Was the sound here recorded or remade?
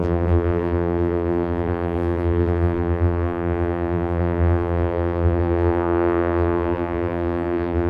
remade